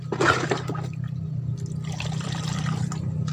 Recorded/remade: recorded